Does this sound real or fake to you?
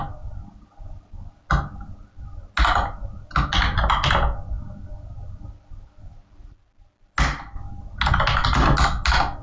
real